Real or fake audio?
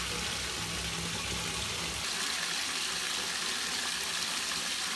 real